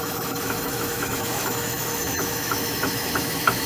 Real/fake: fake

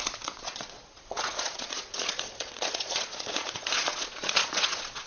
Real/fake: fake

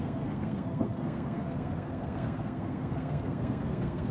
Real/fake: fake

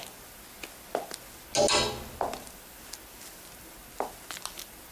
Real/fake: real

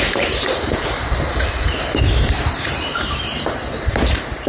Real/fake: fake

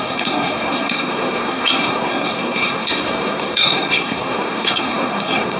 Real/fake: fake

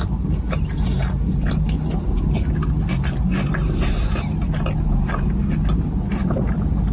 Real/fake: real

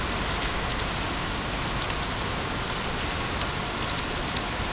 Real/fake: real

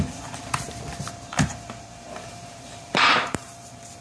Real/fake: fake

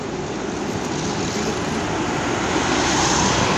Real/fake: real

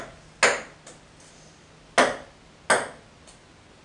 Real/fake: real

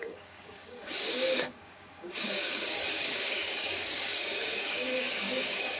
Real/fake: fake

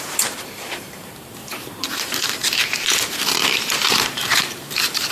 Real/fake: fake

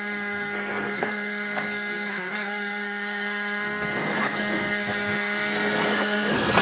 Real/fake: fake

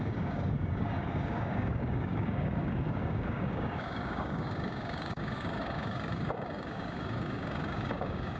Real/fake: fake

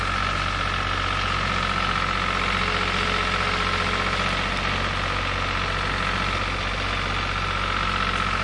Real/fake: real